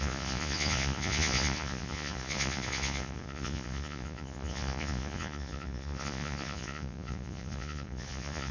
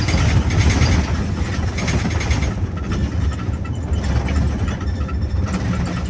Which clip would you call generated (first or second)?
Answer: first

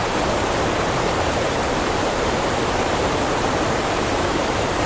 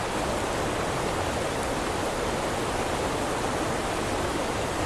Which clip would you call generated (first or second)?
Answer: first